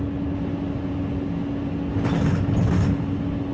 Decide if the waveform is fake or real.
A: real